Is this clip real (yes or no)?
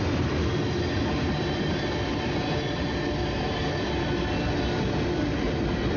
yes